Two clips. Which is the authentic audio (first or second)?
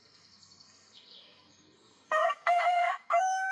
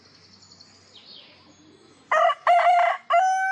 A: second